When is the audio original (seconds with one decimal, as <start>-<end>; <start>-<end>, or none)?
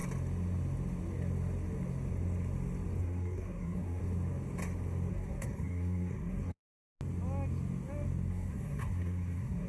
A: 0.0-3.0; 4.0-5.1; 6.9-8.3